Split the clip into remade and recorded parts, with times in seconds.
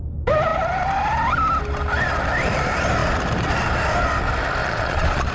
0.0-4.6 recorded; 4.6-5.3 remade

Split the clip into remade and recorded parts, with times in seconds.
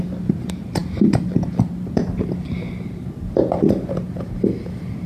0.0-5.1 recorded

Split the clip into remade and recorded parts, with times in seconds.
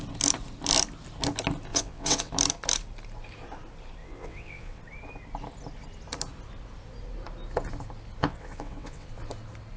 0.0-1.7 recorded; 1.7-2.3 remade; 2.3-4.0 recorded; 4.0-4.8 remade; 4.8-8.2 recorded; 8.2-9.1 remade; 9.1-9.8 recorded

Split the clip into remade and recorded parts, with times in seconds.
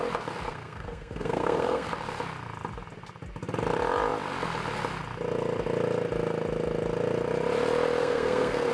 0.0-0.5 recorded; 0.5-1.9 remade; 1.9-8.0 recorded; 8.0-8.7 remade